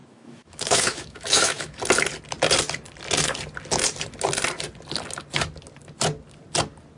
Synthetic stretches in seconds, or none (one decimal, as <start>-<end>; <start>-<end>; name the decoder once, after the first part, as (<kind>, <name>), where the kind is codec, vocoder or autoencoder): 0.0-1.8 (autoencoder, DAC-VAE)